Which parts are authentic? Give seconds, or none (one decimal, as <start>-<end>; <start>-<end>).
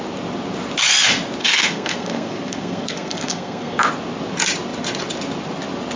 0.0-1.4; 3.8-6.0